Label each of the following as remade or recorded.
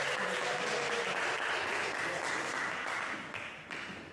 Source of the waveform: recorded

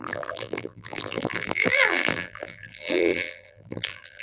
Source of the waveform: remade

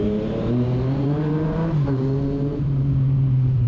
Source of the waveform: remade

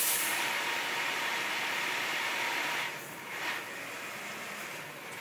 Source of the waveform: remade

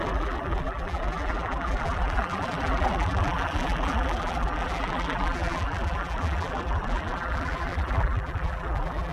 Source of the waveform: remade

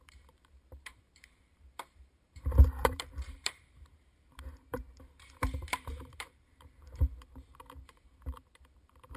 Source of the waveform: remade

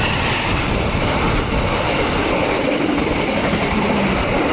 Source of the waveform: remade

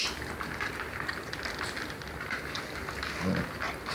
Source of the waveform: recorded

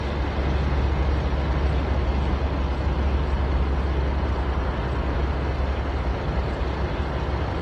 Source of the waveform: recorded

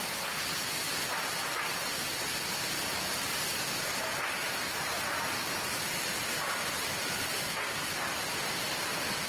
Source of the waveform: recorded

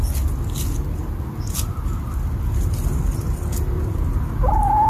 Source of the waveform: recorded